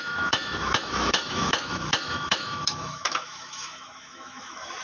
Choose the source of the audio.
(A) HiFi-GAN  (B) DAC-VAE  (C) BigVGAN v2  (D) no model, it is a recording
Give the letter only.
B